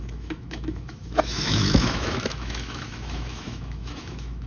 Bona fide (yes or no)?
no